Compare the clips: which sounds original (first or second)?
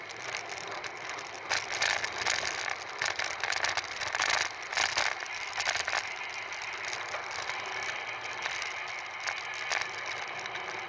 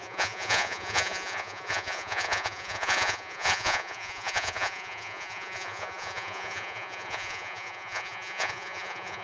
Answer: first